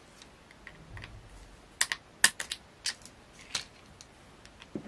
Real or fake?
real